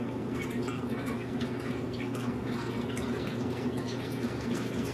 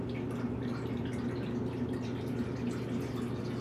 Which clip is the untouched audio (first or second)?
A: second